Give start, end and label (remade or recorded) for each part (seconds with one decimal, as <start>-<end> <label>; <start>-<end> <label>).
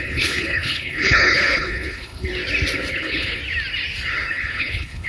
0.0-2.3 remade; 2.3-2.9 recorded; 2.9-3.4 remade; 3.4-4.3 recorded; 4.3-5.1 remade